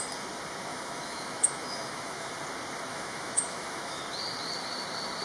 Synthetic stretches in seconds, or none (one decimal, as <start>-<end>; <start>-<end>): 0.7-2.3; 2.9-4.0